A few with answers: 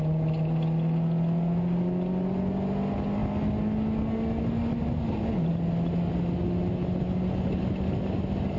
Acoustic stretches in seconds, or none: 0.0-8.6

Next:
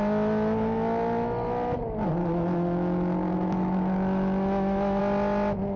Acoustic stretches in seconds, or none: 0.0-2.2; 5.0-5.8

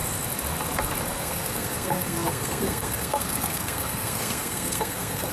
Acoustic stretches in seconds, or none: 0.0-1.2

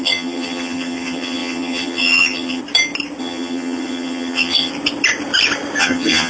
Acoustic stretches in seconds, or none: 2.6-3.2; 4.7-5.8

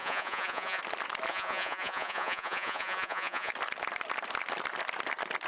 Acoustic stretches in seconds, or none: 0.8-1.3; 3.5-5.5

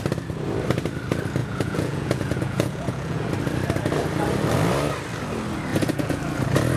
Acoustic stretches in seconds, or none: 0.0-1.4; 3.3-5.7; 6.2-6.8